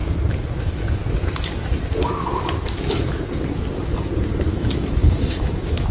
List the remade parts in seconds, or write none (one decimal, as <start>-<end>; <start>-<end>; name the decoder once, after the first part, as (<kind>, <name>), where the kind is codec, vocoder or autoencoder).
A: 0.6-1.0 (autoencoder, DAC-VAE); 4.5-5.9

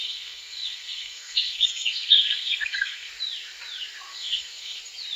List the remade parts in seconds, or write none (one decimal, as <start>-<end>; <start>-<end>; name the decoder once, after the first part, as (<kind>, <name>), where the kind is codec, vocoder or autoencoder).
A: 0.0-3.1 (codec, SNAC); 4.1-4.8

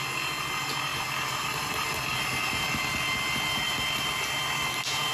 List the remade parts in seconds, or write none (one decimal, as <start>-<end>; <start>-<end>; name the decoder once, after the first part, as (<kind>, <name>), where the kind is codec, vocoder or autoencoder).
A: none